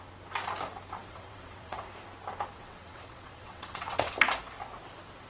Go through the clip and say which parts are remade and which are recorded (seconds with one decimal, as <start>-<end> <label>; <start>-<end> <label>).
0.0-1.0 recorded; 1.0-1.8 remade; 1.8-2.5 recorded; 2.5-4.1 remade; 4.1-5.3 recorded